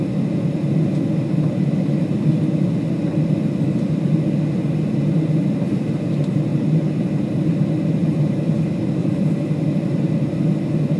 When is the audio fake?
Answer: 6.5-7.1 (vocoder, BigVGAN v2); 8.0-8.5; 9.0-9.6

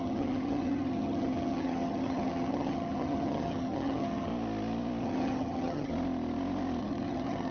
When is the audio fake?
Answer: 0.0-4.3 (vocoder, HiFi-GAN); 5.0-5.9; 6.8-7.5